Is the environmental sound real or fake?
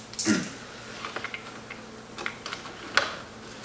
real